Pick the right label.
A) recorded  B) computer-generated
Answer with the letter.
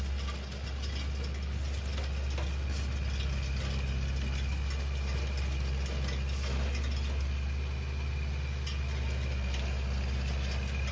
A